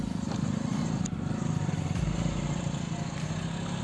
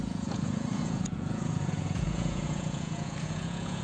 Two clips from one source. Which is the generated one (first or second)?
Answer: second